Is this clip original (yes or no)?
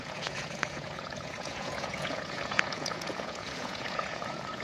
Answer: no